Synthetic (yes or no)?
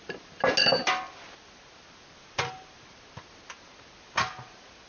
no